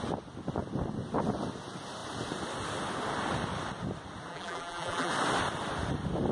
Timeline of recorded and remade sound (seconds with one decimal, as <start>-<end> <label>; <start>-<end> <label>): 0.0-4.3 recorded; 4.3-5.1 remade; 5.1-6.3 recorded

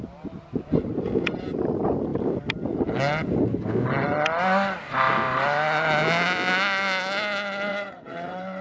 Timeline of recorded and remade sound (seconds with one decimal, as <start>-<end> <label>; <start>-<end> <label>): 0.0-7.7 recorded; 7.7-8.6 remade

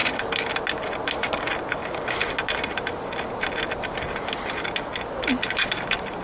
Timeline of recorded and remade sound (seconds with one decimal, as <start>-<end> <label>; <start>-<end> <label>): 0.0-6.2 recorded

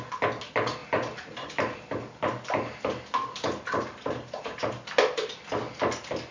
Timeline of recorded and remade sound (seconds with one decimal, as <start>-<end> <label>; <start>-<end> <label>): 0.0-0.8 recorded; 0.8-4.6 remade; 4.6-6.3 recorded